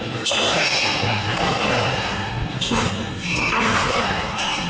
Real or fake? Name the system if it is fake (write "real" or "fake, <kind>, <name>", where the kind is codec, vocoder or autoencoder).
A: fake, codec, SNAC